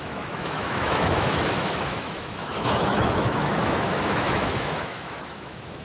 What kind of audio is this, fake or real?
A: fake